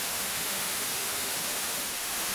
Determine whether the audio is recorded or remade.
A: remade